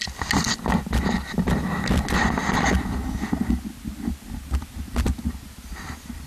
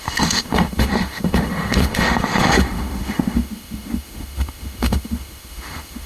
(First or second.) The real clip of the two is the first